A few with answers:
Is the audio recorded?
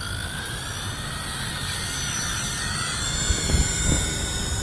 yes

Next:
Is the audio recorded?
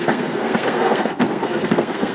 no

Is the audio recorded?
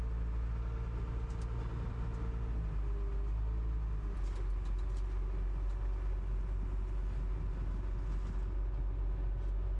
yes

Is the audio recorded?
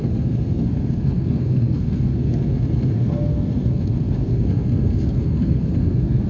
no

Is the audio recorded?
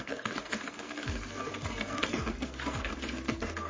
no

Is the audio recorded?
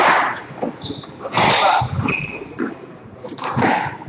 yes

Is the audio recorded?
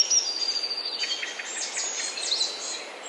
yes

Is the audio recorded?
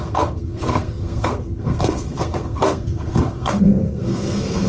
no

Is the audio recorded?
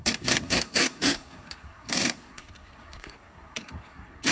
no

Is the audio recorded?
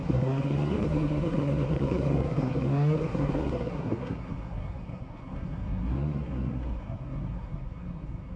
no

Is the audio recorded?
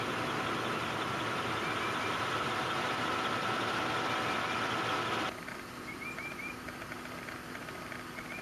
yes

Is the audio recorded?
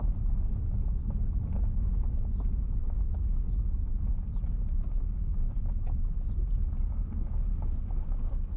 yes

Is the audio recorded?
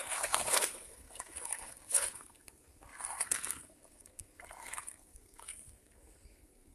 no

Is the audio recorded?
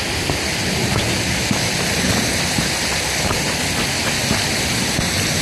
yes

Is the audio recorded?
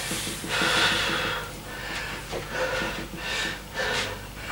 yes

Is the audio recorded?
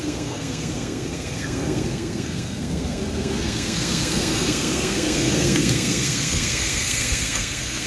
no